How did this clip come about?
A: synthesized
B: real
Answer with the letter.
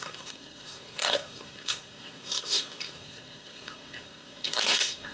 A